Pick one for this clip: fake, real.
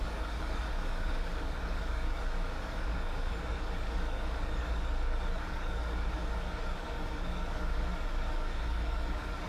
fake